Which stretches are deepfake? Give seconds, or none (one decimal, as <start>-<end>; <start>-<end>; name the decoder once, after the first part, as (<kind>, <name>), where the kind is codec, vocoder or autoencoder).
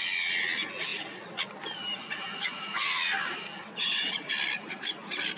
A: 3.6-4.3 (vocoder, WaveNeXt)